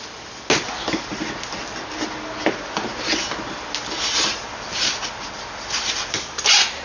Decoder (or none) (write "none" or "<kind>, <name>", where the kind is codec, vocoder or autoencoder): none